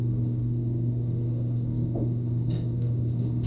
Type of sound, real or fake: fake